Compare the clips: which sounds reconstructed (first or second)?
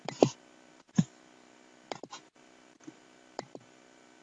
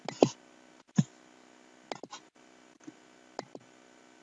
first